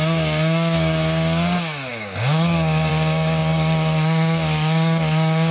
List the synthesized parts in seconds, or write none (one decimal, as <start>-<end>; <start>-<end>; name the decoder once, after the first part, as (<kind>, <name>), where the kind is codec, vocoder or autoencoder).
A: 0.0-5.5 (codec, DAC)